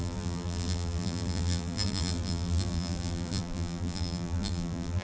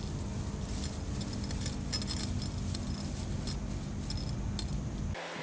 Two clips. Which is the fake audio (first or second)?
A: first